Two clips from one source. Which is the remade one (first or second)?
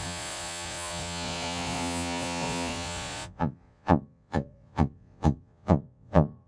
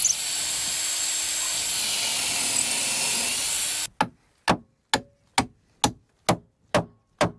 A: first